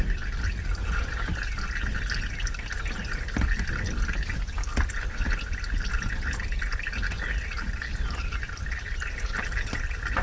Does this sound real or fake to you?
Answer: real